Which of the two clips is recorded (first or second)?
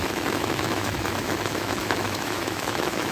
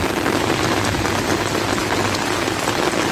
second